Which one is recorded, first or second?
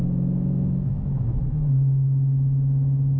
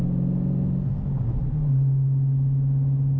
second